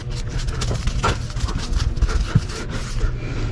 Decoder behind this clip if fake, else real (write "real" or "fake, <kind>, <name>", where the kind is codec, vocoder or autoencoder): real